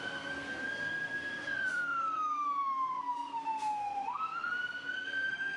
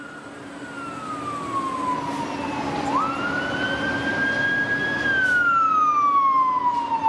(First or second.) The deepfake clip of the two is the first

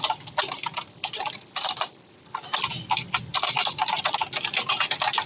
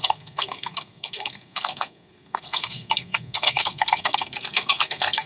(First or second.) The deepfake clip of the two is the second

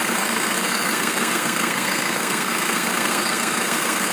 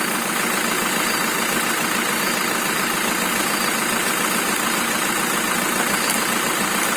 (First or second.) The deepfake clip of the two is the first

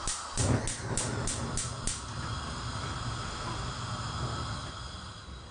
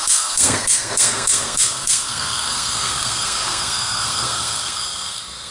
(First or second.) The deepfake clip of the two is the second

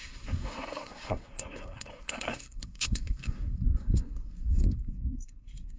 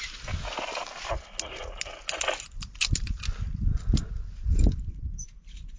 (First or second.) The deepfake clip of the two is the first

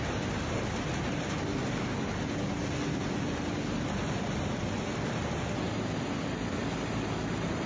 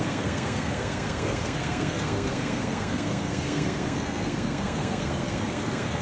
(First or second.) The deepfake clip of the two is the second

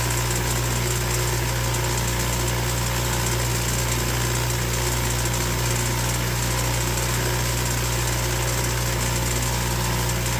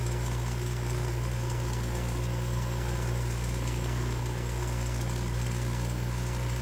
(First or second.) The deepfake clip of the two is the second